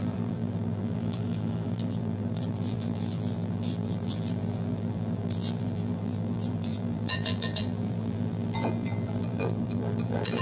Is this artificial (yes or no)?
yes